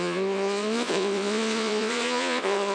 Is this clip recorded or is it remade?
remade